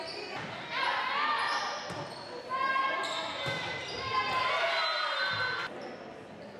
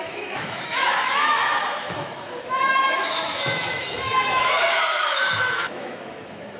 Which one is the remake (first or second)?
second